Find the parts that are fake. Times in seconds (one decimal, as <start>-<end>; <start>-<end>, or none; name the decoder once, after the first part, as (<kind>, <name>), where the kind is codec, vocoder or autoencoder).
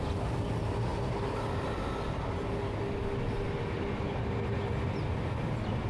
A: none